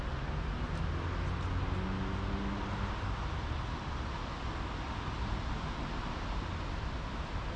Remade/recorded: recorded